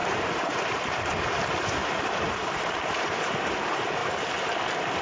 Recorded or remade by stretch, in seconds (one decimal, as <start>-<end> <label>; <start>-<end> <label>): 0.0-1.3 remade; 1.3-1.8 recorded; 1.8-3.1 remade; 3.1-4.0 recorded; 4.0-4.6 remade; 4.6-5.0 recorded